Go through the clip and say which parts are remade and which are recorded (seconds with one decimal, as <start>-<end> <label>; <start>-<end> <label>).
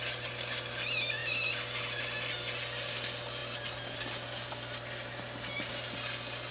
0.0-6.5 recorded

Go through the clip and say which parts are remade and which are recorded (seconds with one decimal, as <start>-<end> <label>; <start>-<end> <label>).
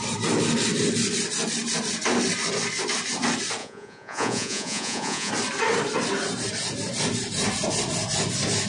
0.0-3.6 recorded; 3.6-5.3 remade; 5.3-8.7 recorded